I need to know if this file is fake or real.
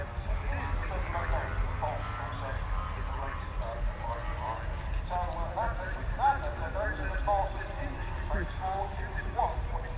real